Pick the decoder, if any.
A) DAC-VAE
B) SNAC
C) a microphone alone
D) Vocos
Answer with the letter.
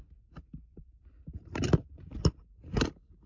C